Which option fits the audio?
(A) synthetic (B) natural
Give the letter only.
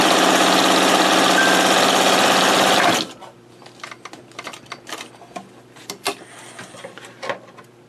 B